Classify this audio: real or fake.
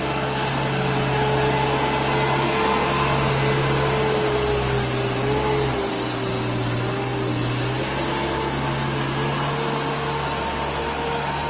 real